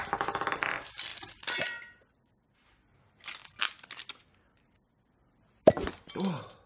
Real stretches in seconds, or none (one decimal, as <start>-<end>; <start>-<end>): 0.0-6.7

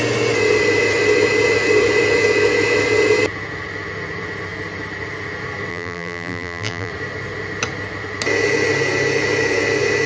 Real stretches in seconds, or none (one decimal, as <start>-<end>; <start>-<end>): 0.0-5.7; 6.9-10.1

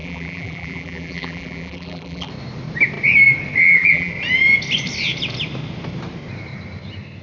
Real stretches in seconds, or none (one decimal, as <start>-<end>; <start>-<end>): 2.3-3.6; 4.1-7.2

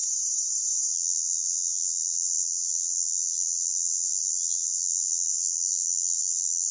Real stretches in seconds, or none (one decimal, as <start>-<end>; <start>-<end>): 0.0-0.9

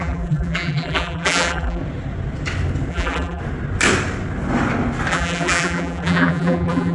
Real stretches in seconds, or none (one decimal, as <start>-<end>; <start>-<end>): 1.8-2.9; 3.4-5.1

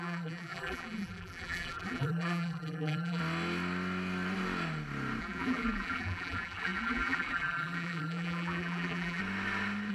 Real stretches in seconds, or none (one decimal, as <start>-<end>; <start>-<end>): 3.2-5.2; 9.2-9.9

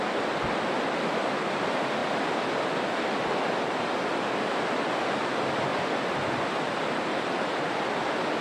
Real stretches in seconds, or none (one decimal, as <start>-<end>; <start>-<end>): 0.0-5.7; 7.4-8.4

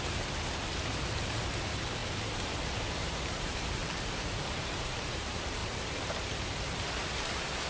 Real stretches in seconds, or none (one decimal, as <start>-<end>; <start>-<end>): 3.8-4.5; 5.6-6.9